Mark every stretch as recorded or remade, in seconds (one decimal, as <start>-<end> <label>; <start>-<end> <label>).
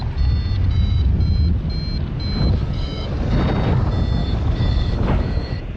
0.0-2.6 recorded; 2.6-3.4 remade; 3.4-4.2 recorded; 4.2-5.8 remade